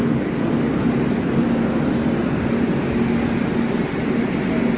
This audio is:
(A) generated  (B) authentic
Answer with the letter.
B